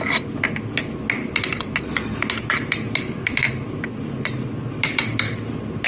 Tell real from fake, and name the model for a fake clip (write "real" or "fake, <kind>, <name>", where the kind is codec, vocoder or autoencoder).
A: real